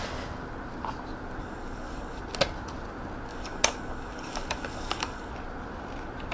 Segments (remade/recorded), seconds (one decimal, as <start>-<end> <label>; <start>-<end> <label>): 0.0-1.4 recorded; 1.4-2.2 remade; 2.2-3.3 recorded; 3.3-5.3 remade; 5.3-6.3 recorded